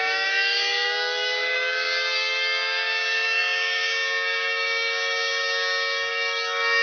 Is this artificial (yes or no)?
yes